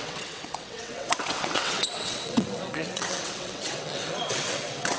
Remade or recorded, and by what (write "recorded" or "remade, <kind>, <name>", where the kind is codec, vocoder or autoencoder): remade, vocoder, WaveNeXt